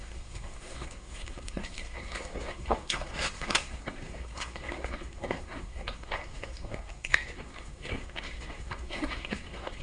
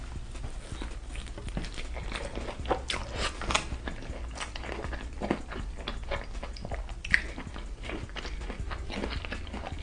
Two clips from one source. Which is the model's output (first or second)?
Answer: first